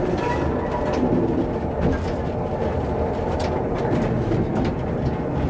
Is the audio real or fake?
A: real